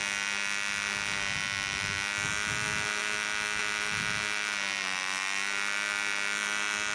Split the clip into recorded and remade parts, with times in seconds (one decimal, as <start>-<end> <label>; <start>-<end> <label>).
0.0-6.9 recorded